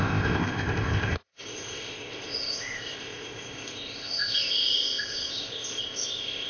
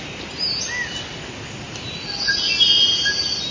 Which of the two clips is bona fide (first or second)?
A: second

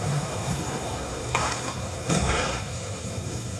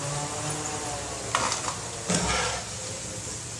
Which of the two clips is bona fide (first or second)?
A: second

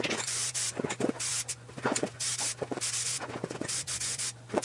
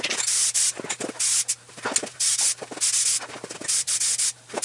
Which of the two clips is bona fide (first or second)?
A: second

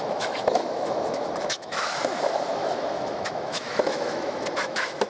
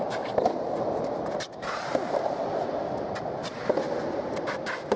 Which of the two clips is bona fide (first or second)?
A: second